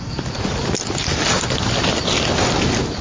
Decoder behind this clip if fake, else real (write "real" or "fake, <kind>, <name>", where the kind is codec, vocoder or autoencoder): real